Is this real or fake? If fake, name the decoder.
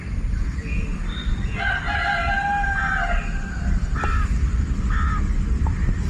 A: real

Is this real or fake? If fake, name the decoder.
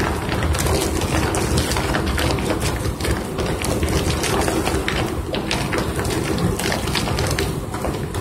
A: real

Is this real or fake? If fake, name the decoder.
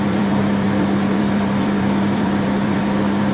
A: fake, vocoder, BigVGAN v2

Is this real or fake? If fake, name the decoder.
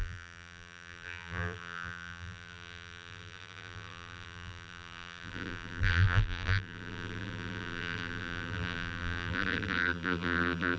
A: fake, vocoder, BigVGAN v2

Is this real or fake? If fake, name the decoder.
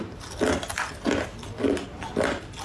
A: real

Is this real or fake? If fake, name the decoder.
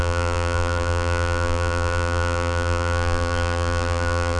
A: fake, vocoder, BigVGAN v2